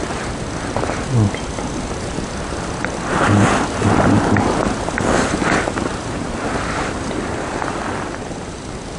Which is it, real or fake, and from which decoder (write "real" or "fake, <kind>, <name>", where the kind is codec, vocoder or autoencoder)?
real